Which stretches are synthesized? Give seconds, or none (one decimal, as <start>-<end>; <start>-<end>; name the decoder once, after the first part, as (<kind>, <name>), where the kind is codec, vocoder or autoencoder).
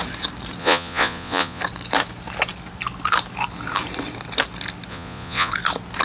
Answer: 0.6-1.6 (vocoder, Vocos); 4.9-5.5